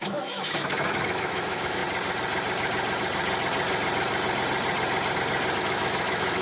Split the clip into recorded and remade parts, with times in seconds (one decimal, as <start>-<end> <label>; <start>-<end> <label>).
0.0-1.8 remade; 1.8-5.6 recorded; 5.6-6.4 remade